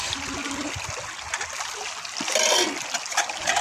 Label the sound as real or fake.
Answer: real